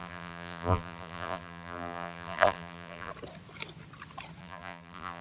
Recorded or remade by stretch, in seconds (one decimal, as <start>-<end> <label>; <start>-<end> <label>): 0.0-3.1 remade; 3.1-4.4 recorded; 4.4-5.2 remade